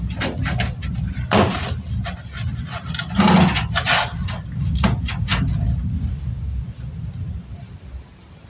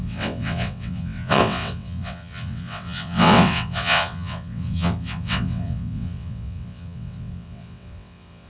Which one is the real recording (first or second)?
first